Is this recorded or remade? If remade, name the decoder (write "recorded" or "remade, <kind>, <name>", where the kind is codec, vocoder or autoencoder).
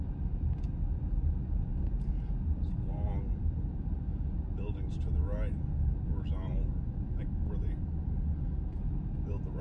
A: recorded